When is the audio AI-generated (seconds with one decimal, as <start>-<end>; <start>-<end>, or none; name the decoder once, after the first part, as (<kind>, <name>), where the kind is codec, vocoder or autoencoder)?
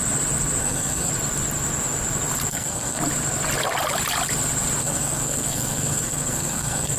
0.6-1.1 (codec, SNAC); 2.5-3.0; 4.8-7.0